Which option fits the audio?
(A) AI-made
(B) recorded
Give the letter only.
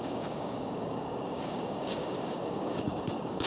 A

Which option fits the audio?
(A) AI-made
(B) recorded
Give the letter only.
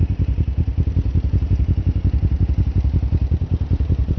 A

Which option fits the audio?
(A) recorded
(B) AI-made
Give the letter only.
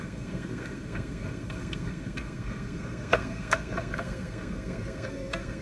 B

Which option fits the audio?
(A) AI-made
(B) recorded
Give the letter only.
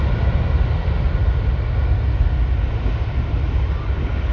B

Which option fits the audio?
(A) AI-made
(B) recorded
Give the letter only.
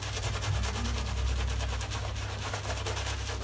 B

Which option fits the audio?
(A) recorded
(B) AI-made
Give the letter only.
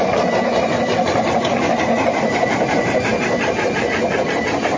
B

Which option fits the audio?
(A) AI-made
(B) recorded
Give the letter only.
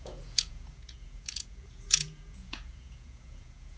A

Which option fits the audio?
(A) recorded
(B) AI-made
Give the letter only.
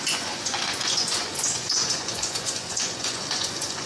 B